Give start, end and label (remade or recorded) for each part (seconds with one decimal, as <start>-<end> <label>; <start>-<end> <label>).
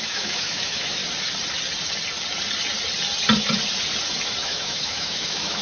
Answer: 0.0-1.0 remade; 1.0-4.4 recorded; 4.4-5.6 remade